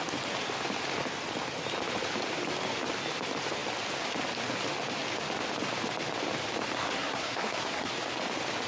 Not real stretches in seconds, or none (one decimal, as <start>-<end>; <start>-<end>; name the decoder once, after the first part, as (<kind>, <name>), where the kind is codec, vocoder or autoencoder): 6.8-7.9 (codec, SNAC)